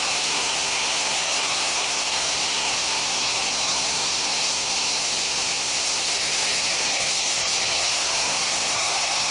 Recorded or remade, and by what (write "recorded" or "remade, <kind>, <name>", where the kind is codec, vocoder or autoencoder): remade, codec, SNAC